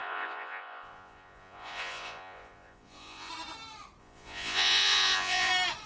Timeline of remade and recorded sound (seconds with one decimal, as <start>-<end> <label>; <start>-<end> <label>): 0.0-3.3 remade; 3.3-4.0 recorded; 4.0-5.5 remade; 5.5-5.9 recorded